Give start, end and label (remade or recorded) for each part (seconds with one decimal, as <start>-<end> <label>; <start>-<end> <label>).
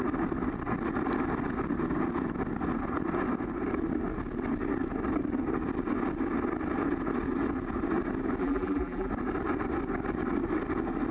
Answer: 0.0-8.4 recorded; 8.4-9.1 remade; 9.1-11.1 recorded